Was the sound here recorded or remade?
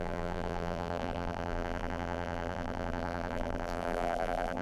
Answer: remade